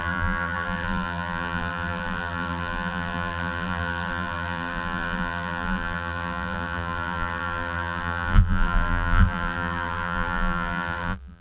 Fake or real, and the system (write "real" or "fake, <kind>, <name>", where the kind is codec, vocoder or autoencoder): fake, vocoder, BigVGAN v2